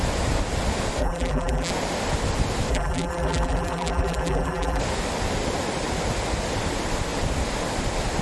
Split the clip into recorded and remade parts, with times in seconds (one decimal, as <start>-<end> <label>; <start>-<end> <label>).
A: 0.0-1.0 recorded; 1.0-1.7 remade; 1.7-2.7 recorded; 2.7-4.8 remade; 4.8-8.2 recorded